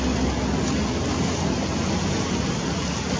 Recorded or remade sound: recorded